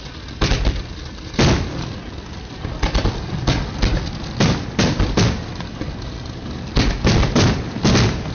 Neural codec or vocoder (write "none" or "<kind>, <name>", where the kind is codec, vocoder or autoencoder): none